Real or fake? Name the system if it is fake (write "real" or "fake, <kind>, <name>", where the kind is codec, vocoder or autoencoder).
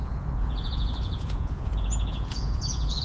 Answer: fake, vocoder, Vocos